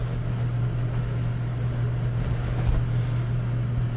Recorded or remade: recorded